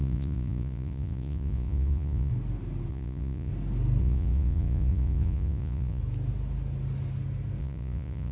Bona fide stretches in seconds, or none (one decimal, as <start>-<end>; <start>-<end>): 2.3-2.9; 3.5-4.0; 6.0-7.6